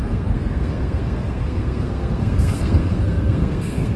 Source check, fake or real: fake